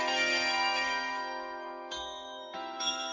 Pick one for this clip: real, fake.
fake